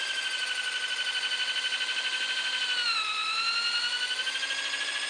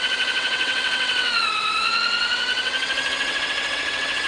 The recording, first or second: first